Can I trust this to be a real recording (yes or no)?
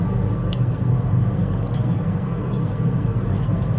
no